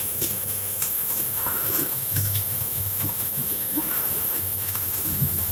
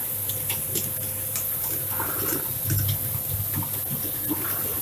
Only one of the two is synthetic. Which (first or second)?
first